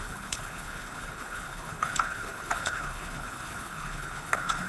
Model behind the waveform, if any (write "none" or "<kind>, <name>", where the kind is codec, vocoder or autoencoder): codec, HILCodec